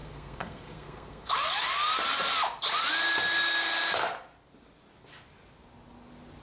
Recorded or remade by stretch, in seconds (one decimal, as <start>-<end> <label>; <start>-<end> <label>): 0.0-1.3 remade; 1.3-6.4 recorded